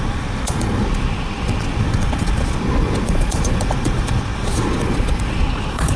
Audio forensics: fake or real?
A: fake